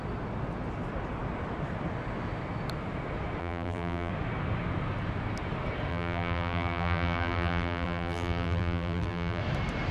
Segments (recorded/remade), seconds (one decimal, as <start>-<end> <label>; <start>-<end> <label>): 0.0-3.4 recorded; 3.4-4.1 remade; 4.1-5.9 recorded; 5.9-9.4 remade; 9.4-9.9 recorded